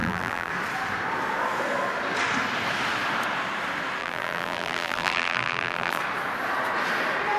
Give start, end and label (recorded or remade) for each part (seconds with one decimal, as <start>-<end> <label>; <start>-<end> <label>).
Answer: 0.0-0.5 remade; 0.5-4.0 recorded; 4.0-6.0 remade; 6.0-7.4 recorded